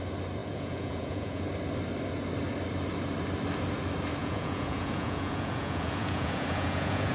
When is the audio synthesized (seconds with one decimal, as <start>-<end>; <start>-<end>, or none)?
0.4-1.4; 4.2-7.1